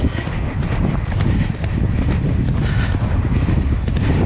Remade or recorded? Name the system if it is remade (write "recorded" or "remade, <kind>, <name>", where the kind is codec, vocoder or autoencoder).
recorded